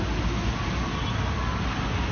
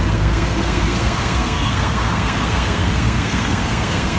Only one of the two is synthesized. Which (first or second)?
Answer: second